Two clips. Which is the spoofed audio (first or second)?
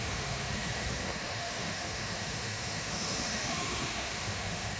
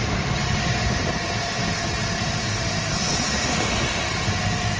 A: first